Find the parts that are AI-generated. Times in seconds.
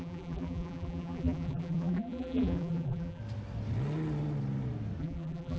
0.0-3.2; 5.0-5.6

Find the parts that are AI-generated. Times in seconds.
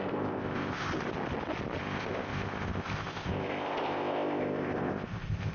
0.0-0.9; 1.8-5.5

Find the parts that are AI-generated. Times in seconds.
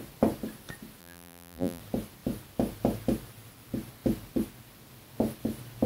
1.0-1.8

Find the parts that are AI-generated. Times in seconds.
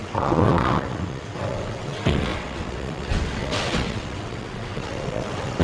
0.0-5.6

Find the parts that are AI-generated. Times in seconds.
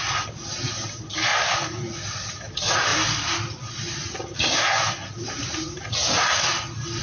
none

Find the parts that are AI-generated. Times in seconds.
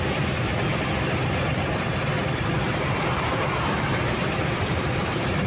0.0-3.4; 4.1-5.5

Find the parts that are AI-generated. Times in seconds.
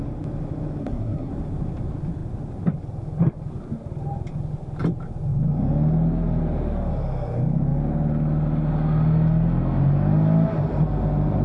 0.8-1.3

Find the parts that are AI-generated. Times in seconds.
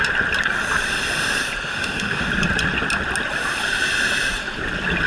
1.7-2.3